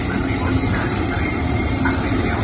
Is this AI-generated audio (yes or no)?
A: yes